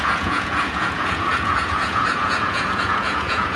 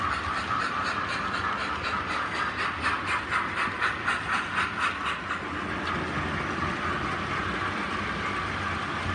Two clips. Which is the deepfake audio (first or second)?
first